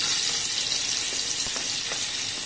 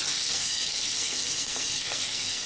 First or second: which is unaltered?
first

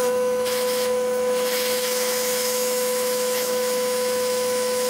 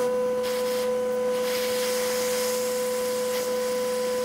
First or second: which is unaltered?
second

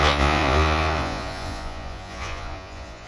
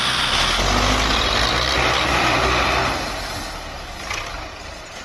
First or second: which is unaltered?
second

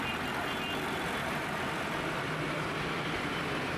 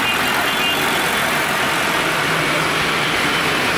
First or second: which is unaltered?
second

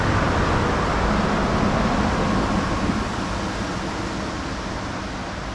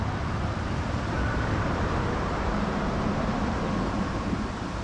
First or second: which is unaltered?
first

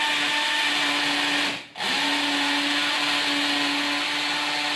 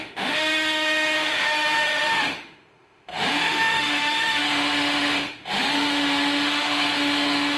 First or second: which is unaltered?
first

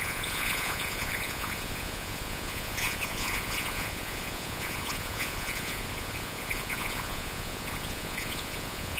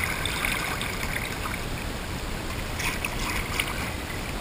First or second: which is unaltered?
second